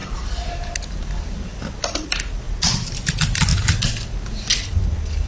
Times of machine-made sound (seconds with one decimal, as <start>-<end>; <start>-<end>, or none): none